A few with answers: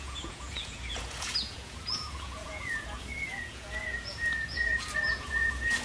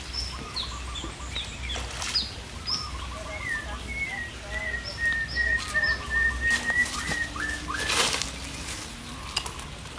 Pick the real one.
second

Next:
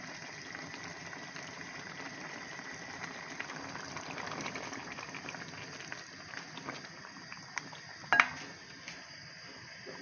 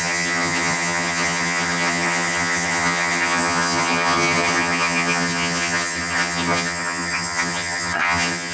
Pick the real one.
first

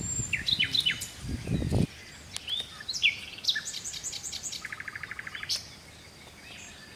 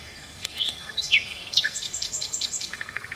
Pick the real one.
first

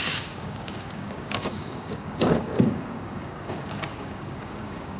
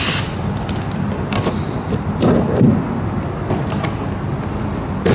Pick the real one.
second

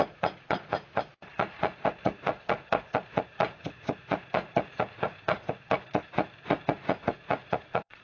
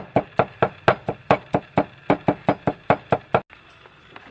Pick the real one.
second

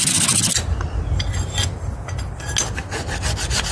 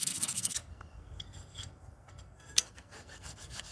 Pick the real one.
first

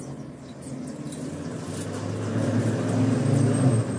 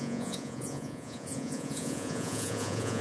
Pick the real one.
first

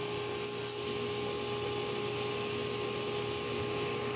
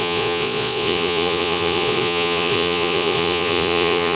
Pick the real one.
first